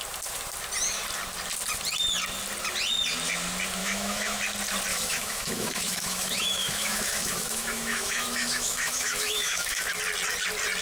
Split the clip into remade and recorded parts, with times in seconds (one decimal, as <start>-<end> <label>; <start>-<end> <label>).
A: 0.0-3.8 recorded; 3.8-4.4 remade; 4.4-4.9 recorded; 4.9-10.0 remade; 10.0-10.8 recorded